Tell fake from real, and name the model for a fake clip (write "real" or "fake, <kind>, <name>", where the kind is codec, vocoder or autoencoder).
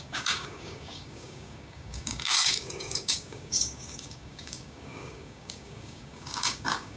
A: fake, codec, DAC